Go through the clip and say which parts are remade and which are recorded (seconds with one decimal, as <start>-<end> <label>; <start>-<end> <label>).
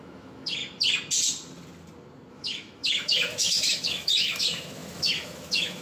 0.0-0.6 remade; 0.6-2.3 recorded; 2.3-5.8 remade